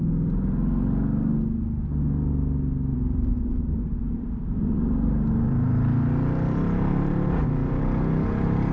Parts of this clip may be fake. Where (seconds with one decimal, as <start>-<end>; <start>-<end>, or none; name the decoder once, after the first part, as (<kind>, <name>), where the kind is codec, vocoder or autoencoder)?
2.9-7.8 (vocoder, BigVGAN v2)